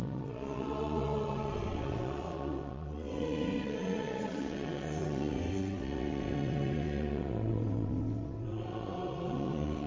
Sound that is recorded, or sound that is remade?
remade